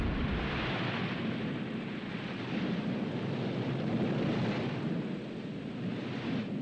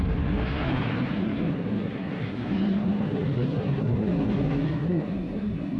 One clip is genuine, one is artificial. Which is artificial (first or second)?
second